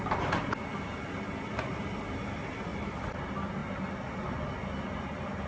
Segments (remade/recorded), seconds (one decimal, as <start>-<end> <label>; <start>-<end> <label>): 0.0-2.7 recorded; 2.7-3.2 remade; 3.2-5.5 recorded

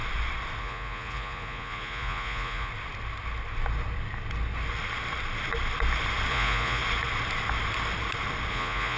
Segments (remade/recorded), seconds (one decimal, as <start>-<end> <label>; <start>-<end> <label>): 0.0-0.6 recorded; 0.6-2.7 remade; 2.7-6.3 recorded; 6.3-6.8 remade; 6.8-8.5 recorded; 8.5-9.0 remade

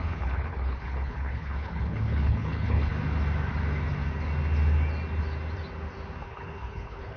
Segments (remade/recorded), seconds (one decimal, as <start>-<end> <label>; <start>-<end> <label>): 0.0-2.9 remade; 2.9-6.2 recorded; 6.2-7.2 remade